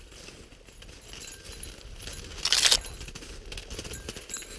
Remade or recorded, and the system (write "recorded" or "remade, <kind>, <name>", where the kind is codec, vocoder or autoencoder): recorded